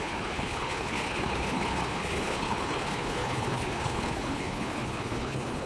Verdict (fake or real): fake